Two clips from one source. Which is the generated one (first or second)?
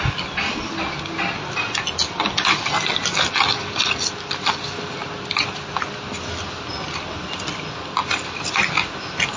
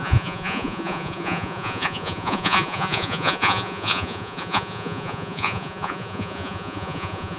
second